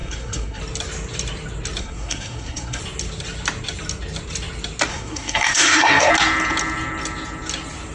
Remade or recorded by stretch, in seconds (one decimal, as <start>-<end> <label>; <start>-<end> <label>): 0.0-0.6 remade; 0.6-1.8 recorded; 1.8-2.8 remade; 2.8-4.9 recorded; 4.9-6.1 remade; 6.1-7.9 recorded

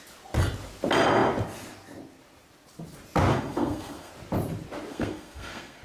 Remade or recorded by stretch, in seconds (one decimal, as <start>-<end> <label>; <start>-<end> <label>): 0.0-3.3 recorded; 3.3-4.1 remade; 4.1-4.9 recorded; 4.9-5.8 remade

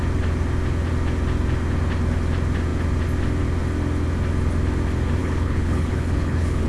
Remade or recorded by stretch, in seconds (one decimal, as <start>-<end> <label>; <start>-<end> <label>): 0.0-5.2 recorded; 5.2-6.7 remade